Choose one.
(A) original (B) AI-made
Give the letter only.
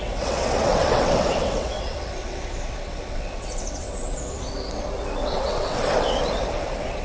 B